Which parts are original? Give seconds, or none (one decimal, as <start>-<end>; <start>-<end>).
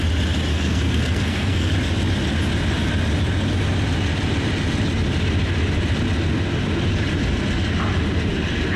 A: 0.0-0.5; 1.7-8.8